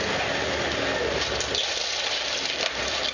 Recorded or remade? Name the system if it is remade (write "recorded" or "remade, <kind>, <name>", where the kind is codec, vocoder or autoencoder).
recorded